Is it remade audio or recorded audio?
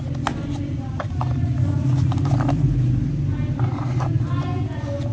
recorded